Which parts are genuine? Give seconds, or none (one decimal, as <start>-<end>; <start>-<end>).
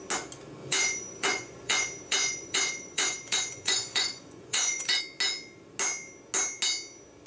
0.0-0.6; 5.0-7.3